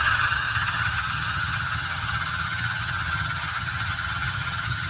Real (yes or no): no